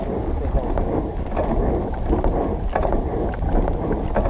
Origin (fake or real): real